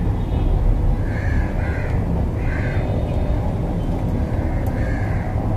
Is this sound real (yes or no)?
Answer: yes